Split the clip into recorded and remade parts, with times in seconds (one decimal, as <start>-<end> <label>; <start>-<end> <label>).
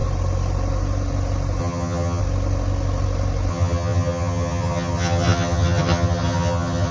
0.0-1.6 recorded; 1.6-2.2 remade; 2.2-3.5 recorded; 3.5-6.9 remade